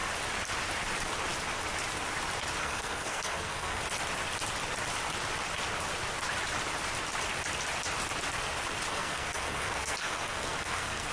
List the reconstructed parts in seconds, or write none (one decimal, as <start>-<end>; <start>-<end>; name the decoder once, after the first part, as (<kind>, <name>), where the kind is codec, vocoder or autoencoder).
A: 2.6-3.8 (codec, SNAC); 8.9-11.1